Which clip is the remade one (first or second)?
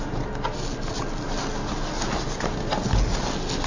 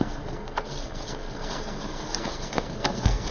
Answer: second